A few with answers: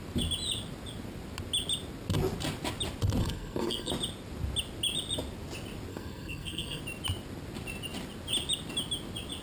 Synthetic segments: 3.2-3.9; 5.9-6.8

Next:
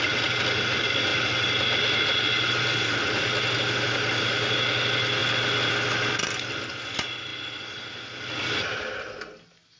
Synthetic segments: 1.1-3.2; 5.2-5.7; 7.3-8.9

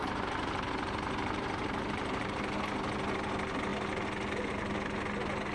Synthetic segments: 0.0-2.3

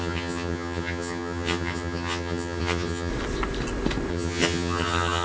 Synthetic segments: 0.0-3.1; 4.1-5.2

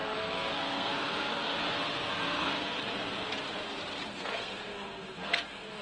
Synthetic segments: 0.0-3.0; 4.1-5.8

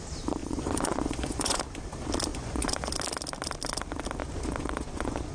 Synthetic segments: 0.4-1.6; 2.3-2.9; 4.2-5.3